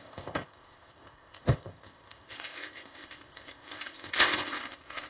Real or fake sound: fake